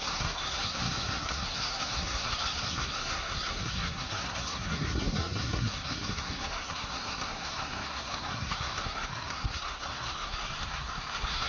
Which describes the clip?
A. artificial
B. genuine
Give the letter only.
A